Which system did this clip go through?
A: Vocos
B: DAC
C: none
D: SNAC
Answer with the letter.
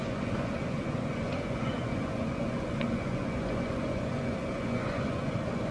A